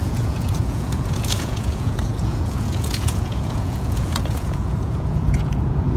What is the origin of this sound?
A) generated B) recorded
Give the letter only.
A